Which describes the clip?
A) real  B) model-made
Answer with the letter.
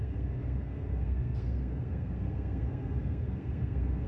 B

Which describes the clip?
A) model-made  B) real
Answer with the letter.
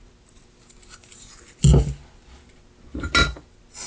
B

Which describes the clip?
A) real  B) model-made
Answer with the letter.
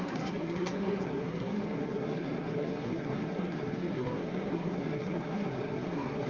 B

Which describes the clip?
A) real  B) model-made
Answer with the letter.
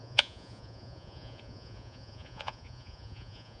B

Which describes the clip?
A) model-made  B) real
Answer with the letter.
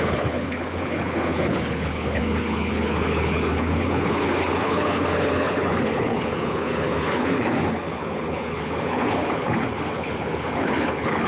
A